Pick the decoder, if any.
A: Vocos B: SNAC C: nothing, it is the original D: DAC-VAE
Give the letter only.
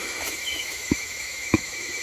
D